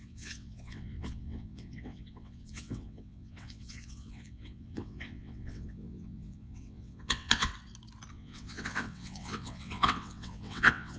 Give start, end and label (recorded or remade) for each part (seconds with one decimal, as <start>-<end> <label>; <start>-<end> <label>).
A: 0.0-7.5 remade; 7.5-8.1 recorded; 8.1-11.0 remade